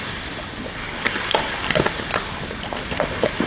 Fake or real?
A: real